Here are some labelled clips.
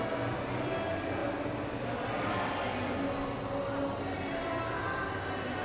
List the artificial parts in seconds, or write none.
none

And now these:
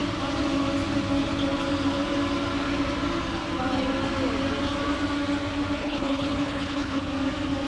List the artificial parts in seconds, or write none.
5.8-7.1

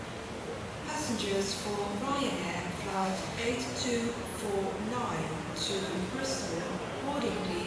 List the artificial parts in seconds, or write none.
2.9-3.5

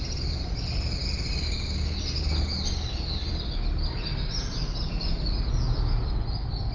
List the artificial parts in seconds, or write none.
none

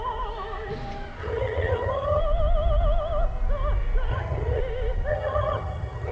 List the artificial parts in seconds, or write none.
1.2-2.2; 4.1-4.6; 5.1-6.1